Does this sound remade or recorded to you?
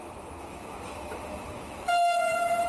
remade